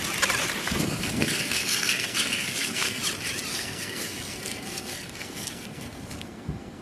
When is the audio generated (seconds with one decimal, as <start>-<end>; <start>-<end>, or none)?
0.6-3.0; 3.5-6.8

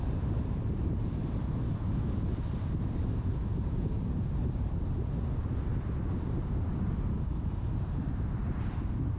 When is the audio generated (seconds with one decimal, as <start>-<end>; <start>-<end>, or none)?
0.0-1.6; 6.0-9.2